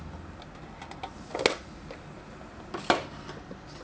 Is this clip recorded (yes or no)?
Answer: yes